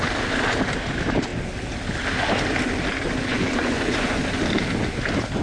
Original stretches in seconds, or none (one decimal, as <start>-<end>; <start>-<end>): 0.0-3.3; 4.2-5.4